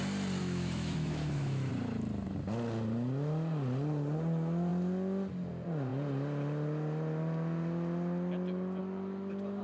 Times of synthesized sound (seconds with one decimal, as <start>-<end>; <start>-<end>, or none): 0.4-1.7